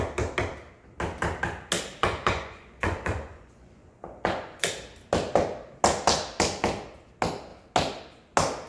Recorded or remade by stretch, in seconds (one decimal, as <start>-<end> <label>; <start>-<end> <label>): 0.0-2.0 recorded; 2.0-4.7 remade; 4.7-8.7 recorded